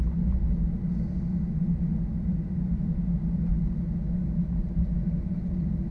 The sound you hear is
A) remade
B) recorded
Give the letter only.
B